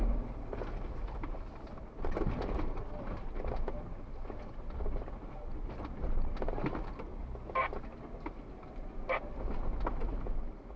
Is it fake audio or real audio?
real